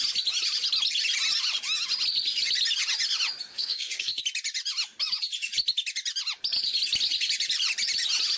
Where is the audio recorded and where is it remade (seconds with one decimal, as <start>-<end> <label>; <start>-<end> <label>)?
0.0-3.5 recorded; 3.5-4.2 remade; 4.2-8.4 recorded